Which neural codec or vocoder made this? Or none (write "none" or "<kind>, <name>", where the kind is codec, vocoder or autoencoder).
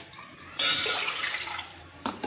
vocoder, BigVGAN v2